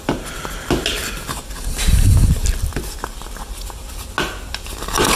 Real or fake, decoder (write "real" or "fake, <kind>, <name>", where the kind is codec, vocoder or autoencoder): real